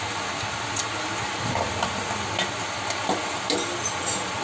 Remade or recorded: recorded